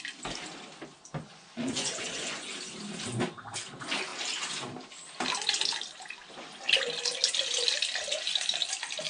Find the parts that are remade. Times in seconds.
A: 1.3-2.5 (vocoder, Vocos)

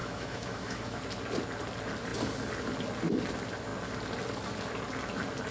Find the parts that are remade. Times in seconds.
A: 0.0-1.0 (autoencoder, DAC-VAE)

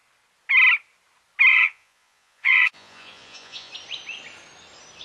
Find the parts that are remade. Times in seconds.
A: 1.5-3.7 (vocoder, Vocos)

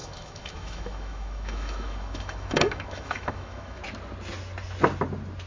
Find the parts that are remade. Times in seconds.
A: 0.0-3.8 (autoencoder, DAC-VAE)

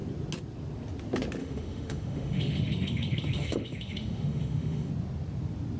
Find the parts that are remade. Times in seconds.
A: 1.4-4.9 (autoencoder, DAC-VAE)

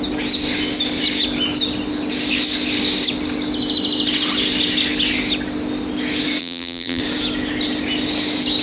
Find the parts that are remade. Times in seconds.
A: 6.4-7.0 (vocoder, BigVGAN v2)

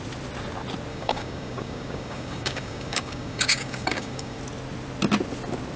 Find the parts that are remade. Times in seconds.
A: 0.9-4.4 (codec, DAC)